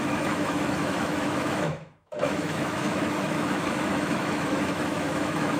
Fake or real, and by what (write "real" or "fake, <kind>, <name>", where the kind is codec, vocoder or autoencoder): fake, autoencoder, DAC-VAE